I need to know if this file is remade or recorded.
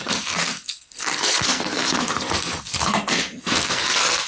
remade